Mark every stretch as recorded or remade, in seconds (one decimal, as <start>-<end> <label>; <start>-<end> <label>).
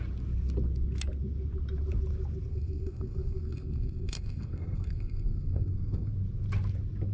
0.0-2.5 recorded; 2.5-6.1 remade; 6.1-7.1 recorded